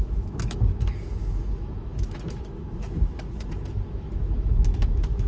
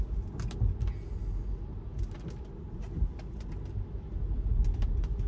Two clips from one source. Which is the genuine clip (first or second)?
second